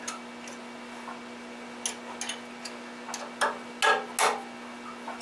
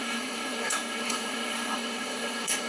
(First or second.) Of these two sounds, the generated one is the second